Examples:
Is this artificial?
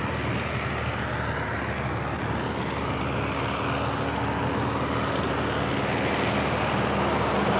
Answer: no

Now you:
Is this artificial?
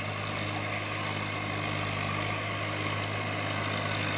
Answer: no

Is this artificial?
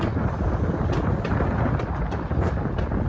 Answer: no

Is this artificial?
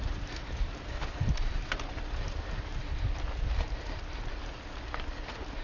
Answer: no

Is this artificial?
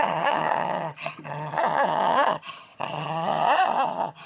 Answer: yes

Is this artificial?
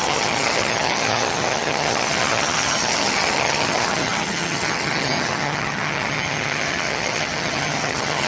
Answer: yes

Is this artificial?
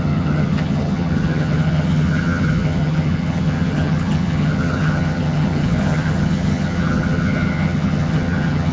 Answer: yes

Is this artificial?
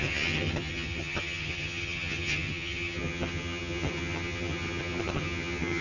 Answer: yes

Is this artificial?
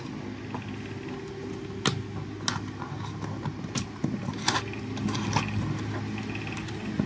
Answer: no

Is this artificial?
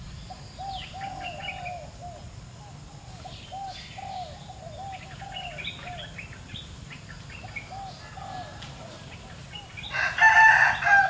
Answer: no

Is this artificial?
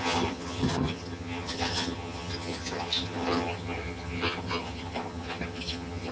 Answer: yes